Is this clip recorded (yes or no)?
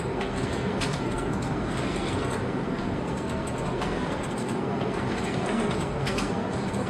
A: no